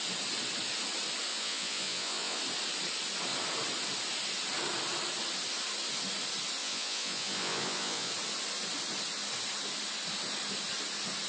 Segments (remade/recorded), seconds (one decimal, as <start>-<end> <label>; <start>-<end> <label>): 0.0-1.3 recorded; 1.3-2.4 remade; 2.4-6.6 recorded; 6.6-8.1 remade; 8.1-11.3 recorded

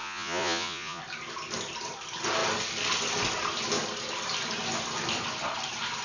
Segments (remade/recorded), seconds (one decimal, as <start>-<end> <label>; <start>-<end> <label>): 0.0-1.0 remade; 1.0-6.0 recorded

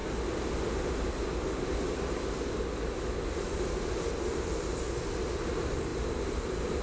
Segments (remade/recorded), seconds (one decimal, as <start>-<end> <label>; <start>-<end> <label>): 0.0-6.8 recorded

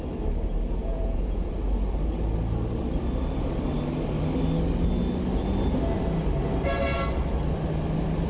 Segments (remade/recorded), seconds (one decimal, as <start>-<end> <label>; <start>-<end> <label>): 0.0-0.8 recorded; 0.8-1.5 remade; 1.5-8.3 recorded